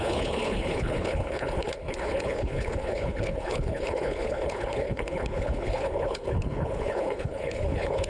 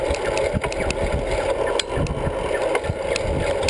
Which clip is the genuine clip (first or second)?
second